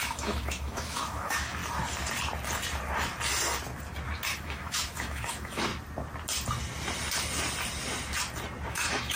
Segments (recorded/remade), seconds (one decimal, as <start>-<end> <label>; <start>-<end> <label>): 0.0-1.6 remade; 1.6-4.4 recorded; 4.4-5.7 remade; 5.7-8.7 recorded; 8.7-9.2 remade